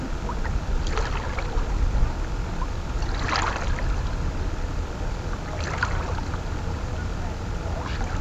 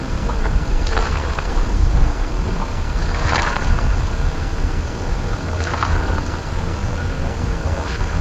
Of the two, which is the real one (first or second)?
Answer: first